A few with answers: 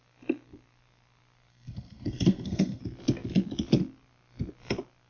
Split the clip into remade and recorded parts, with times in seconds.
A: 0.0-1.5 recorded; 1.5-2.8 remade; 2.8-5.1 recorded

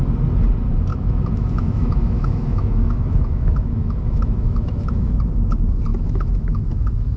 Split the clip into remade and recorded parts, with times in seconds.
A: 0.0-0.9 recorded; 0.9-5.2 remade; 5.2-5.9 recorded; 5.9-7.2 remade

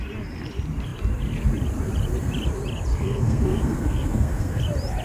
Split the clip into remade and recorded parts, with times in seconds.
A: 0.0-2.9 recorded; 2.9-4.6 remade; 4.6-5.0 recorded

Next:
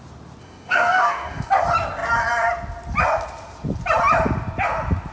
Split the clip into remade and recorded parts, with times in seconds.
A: 0.0-0.4 recorded; 0.4-1.5 remade; 1.5-5.1 recorded

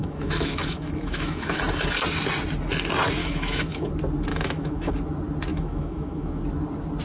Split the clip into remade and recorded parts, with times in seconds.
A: 0.0-1.6 remade; 1.6-3.2 recorded; 3.2-3.9 remade; 3.9-4.3 recorded; 4.3-4.9 remade; 4.9-5.5 recorded; 5.5-6.4 remade; 6.4-7.0 recorded

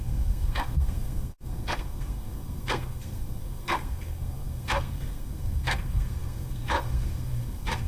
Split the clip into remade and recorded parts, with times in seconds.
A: 0.0-7.9 remade

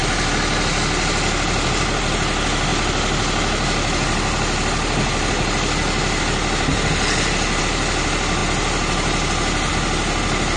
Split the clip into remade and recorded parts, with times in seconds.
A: 0.0-10.6 recorded